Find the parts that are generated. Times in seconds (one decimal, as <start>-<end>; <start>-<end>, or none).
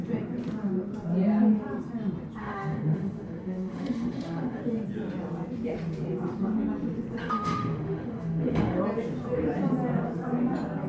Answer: 2.4-4.6; 7.2-8.8